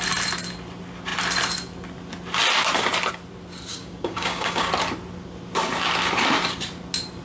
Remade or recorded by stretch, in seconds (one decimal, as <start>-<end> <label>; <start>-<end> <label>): 0.0-3.7 recorded; 3.7-4.7 remade; 4.7-7.2 recorded